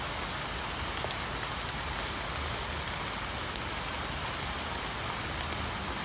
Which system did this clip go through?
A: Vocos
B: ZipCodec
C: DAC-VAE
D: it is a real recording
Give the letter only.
D